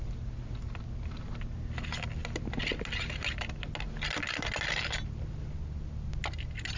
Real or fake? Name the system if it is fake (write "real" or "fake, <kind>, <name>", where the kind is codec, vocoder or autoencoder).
real